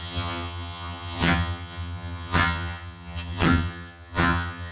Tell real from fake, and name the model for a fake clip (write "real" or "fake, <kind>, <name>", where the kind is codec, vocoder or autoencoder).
fake, vocoder, HiFi-GAN